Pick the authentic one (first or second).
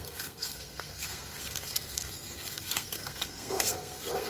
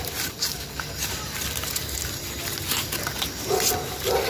second